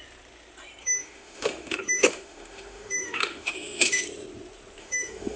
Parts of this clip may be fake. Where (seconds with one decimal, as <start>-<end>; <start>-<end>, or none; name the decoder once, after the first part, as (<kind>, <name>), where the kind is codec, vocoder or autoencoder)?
0.8-4.0 (autoencoder, DAC-VAE); 4.8-5.4